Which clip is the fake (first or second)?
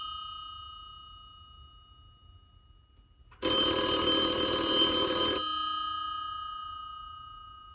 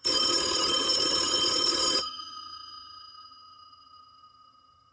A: second